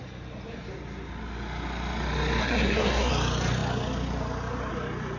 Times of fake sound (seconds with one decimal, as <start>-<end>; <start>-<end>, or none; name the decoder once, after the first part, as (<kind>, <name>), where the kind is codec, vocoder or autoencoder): 2.4-3.1 (codec, SNAC)